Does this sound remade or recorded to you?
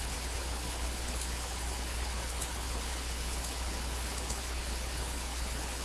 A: remade